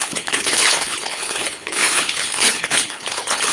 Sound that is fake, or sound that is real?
fake